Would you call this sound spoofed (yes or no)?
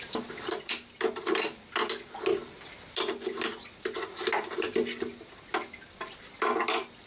no